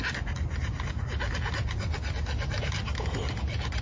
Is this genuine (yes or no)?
yes